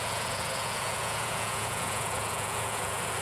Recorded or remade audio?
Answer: remade